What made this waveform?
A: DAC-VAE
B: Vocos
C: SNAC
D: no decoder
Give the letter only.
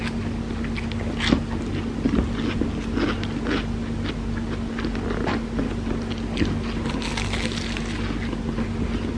D